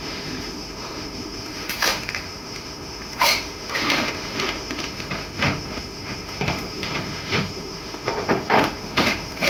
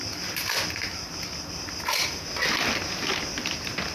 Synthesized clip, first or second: first